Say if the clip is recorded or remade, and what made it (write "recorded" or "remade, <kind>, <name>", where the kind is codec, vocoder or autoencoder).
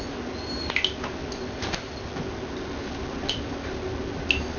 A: recorded